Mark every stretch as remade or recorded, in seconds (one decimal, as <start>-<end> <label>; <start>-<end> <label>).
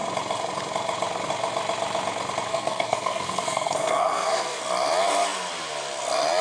0.0-2.5 recorded; 2.5-4.6 remade; 4.6-6.4 recorded